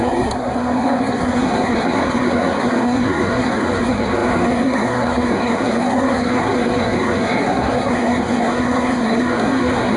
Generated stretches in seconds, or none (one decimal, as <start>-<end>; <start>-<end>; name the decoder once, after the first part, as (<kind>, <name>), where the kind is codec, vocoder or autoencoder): 0.0-10.0 (codec, SNAC)